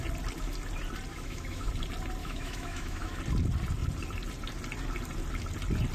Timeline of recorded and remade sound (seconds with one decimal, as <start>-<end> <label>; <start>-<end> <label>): 0.0-1.1 recorded; 1.1-1.7 remade; 1.7-2.2 recorded; 2.2-3.2 remade; 3.2-5.9 recorded